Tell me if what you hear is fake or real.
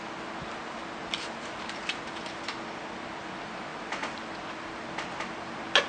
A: real